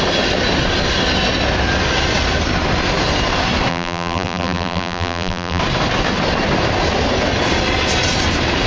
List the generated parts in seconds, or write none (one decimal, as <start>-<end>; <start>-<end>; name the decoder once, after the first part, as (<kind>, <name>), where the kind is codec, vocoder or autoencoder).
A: 3.7-5.6 (vocoder, BigVGAN v2)